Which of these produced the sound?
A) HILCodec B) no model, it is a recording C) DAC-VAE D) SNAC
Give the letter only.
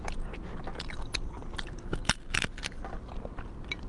B